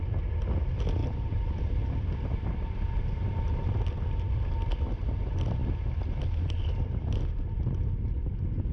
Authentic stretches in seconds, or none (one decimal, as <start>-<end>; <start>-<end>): 0.0-1.0; 1.6-8.7